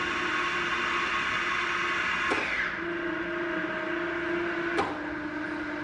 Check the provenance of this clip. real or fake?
real